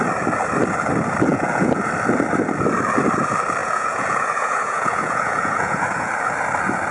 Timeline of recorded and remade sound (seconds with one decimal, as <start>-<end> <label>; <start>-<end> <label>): 0.0-1.3 recorded; 1.3-1.8 remade; 1.8-3.6 recorded; 3.6-6.1 remade; 6.1-6.9 recorded